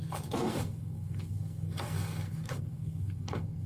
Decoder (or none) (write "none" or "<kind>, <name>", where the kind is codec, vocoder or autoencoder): codec, SNAC